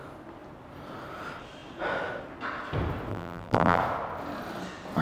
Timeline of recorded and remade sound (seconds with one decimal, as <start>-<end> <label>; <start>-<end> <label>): 0.0-3.1 recorded; 3.1-3.8 remade; 3.8-5.0 recorded